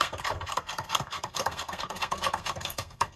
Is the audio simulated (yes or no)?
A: yes